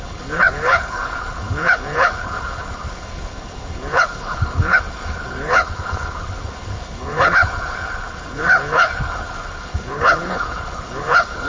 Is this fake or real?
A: fake